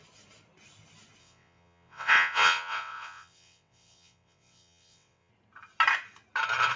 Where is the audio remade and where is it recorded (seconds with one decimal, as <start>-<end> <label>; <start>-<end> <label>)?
0.0-1.2 recorded; 1.2-5.3 remade; 5.3-6.8 recorded